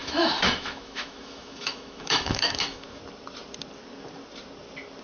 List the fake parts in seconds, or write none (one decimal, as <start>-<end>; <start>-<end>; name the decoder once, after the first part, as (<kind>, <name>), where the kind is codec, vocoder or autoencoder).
0.0-3.0 (autoencoder, DAC-VAE)